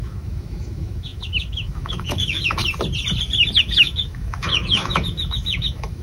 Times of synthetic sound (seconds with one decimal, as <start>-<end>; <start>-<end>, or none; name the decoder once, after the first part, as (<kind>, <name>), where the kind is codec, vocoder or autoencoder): 0.0-2.6 (autoencoder, DAC-VAE); 3.6-6.0